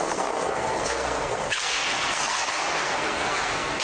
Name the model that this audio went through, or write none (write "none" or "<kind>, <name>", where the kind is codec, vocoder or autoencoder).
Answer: codec, SNAC